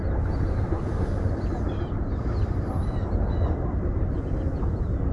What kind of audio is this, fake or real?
real